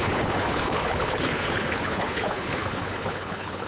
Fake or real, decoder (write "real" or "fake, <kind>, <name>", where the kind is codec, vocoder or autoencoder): fake, codec, HILCodec